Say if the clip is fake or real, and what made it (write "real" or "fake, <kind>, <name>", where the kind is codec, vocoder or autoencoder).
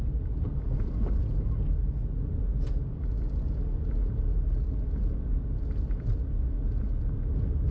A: real